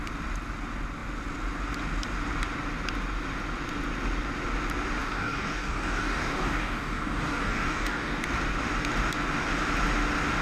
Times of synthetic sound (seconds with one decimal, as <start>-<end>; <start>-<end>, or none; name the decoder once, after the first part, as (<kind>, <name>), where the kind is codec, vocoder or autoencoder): 5.0-8.2 (codec, DAC)